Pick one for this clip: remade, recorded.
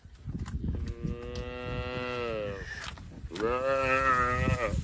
recorded